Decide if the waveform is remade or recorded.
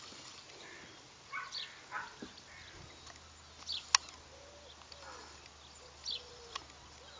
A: recorded